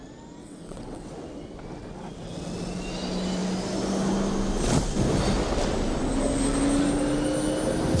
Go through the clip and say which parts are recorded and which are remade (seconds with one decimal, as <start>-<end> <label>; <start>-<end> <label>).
0.0-0.4 recorded; 0.4-1.1 remade; 1.1-8.0 recorded